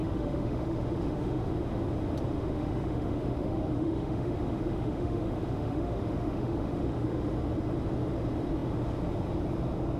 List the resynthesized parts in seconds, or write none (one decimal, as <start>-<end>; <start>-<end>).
0.0-1.5; 2.4-7.3